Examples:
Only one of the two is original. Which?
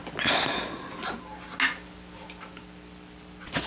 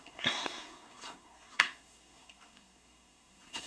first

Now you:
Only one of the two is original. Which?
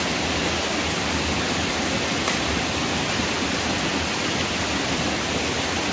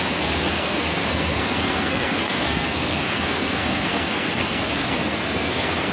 first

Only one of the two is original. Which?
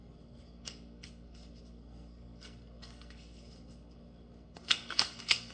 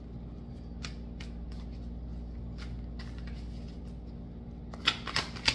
second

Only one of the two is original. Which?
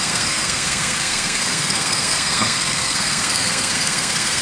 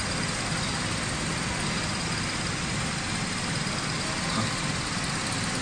second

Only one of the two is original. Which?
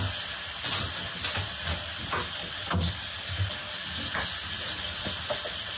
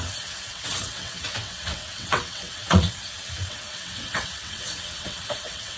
first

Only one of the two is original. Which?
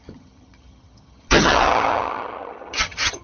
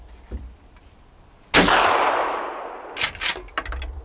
second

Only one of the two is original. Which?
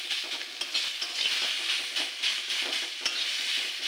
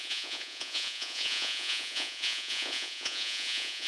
first